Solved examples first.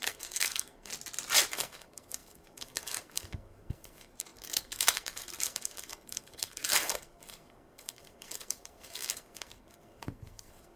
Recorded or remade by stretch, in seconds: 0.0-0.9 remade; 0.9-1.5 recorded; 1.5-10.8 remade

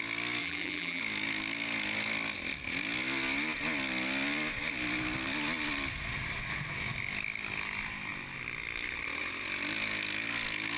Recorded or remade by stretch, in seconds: 0.0-0.4 recorded; 0.4-1.0 remade; 1.0-10.8 recorded